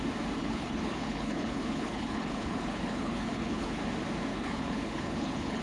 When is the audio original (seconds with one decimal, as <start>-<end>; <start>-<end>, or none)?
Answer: 0.0-0.4; 3.8-4.3